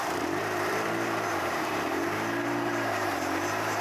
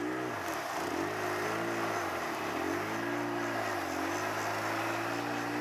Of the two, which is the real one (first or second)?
second